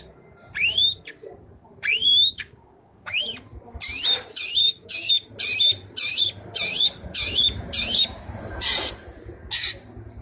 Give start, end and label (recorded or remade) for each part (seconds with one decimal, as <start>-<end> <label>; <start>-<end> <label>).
0.0-2.1 recorded; 2.1-3.2 remade; 3.2-4.6 recorded; 4.6-5.1 remade; 5.1-10.2 recorded